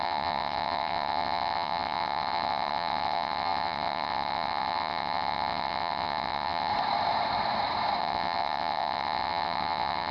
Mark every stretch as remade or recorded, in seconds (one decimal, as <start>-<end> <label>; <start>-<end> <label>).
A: 0.0-6.7 remade; 6.7-8.0 recorded; 8.0-10.1 remade